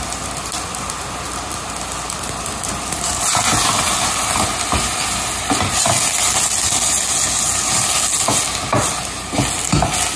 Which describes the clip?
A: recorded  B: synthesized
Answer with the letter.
A